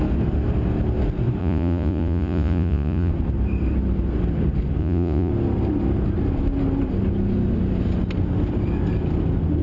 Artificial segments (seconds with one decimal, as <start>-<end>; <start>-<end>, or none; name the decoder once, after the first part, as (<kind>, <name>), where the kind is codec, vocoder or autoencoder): 1.4-3.1 (vocoder, Vocos); 4.8-5.3

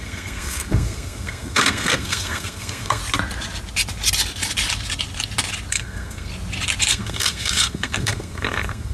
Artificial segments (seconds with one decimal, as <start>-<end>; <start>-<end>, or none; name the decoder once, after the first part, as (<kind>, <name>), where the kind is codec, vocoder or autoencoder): 0.0-3.0 (codec, SNAC); 5.7-6.3; 6.9-8.9

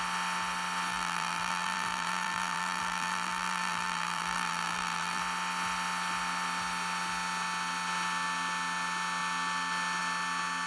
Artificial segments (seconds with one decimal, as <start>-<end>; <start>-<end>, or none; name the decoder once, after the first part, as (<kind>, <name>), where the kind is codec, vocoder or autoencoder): 0.9-5.2 (vocoder, BigVGAN v2)